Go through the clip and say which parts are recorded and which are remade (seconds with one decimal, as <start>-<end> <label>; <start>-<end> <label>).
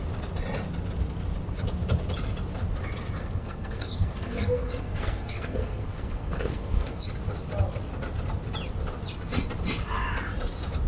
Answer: 0.0-3.2 recorded; 3.2-7.1 remade; 7.1-10.9 recorded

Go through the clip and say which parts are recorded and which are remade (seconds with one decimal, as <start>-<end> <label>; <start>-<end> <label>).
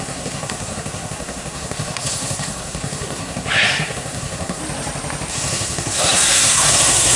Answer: 0.0-4.6 remade; 4.6-5.3 recorded; 5.3-7.2 remade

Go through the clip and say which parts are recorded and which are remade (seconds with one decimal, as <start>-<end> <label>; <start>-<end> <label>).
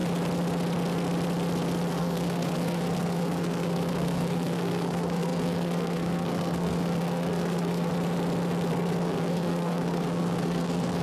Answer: 0.0-1.9 recorded; 1.9-7.9 remade; 7.9-8.7 recorded; 8.7-11.0 remade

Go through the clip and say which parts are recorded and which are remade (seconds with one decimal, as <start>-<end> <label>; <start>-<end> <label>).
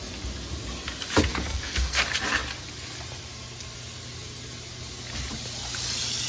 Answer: 0.0-1.3 recorded; 1.3-2.0 remade; 2.0-6.3 recorded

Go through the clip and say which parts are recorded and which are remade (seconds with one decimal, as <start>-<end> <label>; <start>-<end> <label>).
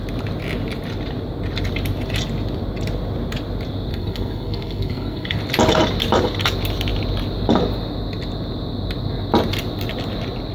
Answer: 0.0-3.9 recorded; 3.9-5.4 remade; 5.4-10.5 recorded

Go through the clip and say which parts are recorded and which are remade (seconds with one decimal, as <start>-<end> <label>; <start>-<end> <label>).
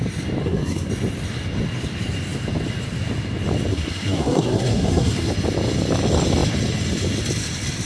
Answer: 0.0-0.4 recorded; 0.4-0.9 remade; 0.9-3.7 recorded; 3.7-5.3 remade; 5.3-7.9 recorded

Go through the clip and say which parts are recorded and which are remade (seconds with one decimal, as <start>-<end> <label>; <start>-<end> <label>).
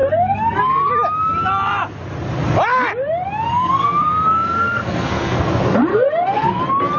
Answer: 0.0-0.9 remade; 0.9-3.5 recorded; 3.5-5.4 remade; 5.4-5.9 recorded; 5.9-6.6 remade; 6.6-7.0 recorded